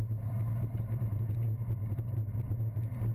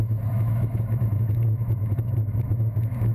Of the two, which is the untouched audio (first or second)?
first